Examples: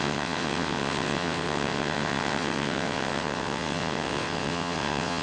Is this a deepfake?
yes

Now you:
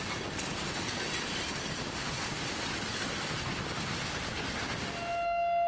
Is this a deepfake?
no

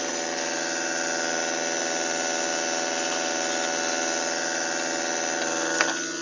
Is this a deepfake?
no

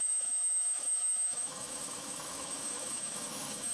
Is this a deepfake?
yes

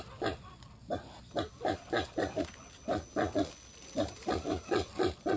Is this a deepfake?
no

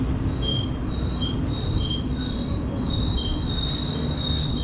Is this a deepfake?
no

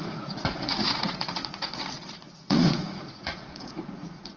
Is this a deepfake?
yes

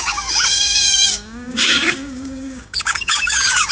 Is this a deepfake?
yes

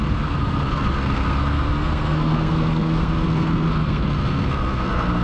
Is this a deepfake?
yes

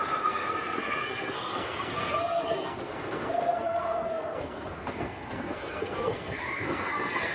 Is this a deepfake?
yes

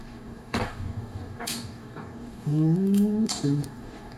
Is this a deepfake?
yes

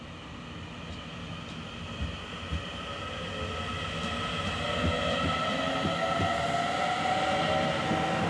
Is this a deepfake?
no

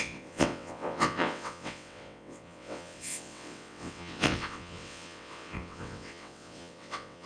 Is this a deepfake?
yes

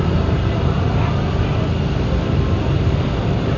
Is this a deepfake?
no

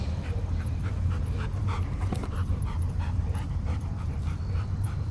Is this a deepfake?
yes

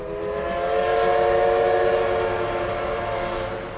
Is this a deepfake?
no